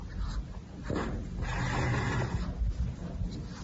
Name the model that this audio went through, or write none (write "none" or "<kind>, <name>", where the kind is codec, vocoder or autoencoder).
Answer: none